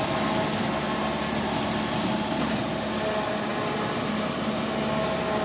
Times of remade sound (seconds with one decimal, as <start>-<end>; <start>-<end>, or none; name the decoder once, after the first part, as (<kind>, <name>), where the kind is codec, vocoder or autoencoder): none